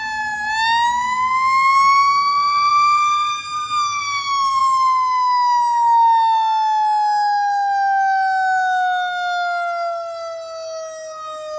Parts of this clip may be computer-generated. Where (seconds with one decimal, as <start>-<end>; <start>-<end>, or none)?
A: 2.7-4.6